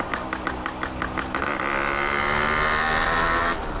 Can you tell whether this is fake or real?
real